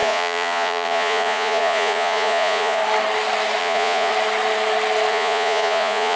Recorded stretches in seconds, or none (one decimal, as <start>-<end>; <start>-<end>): 2.8-3.6; 4.1-5.1